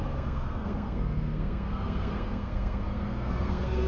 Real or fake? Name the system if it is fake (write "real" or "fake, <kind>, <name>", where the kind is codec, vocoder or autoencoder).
fake, codec, SNAC